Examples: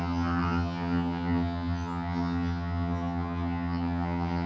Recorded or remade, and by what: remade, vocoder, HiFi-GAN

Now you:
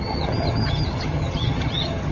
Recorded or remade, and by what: remade, vocoder, HiFi-GAN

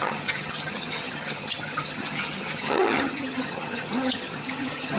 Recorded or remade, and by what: remade, vocoder, HiFi-GAN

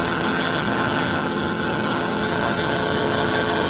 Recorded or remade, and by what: remade, vocoder, HiFi-GAN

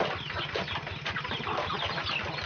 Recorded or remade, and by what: recorded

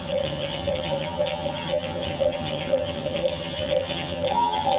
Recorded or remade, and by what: remade, vocoder, HiFi-GAN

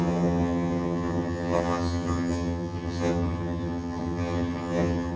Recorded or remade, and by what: remade, vocoder, HiFi-GAN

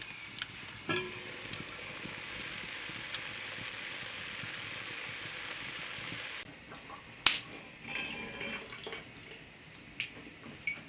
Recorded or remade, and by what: recorded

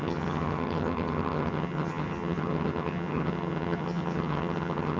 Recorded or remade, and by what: remade, vocoder, HiFi-GAN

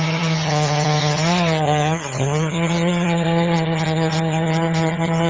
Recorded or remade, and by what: remade, vocoder, HiFi-GAN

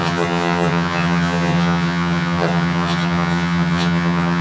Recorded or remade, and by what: remade, vocoder, HiFi-GAN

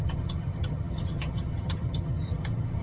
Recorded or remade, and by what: remade, vocoder, HiFi-GAN